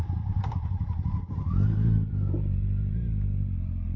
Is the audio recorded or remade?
remade